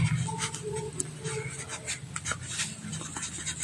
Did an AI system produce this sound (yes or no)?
no